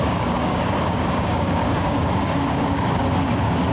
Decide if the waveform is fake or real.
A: fake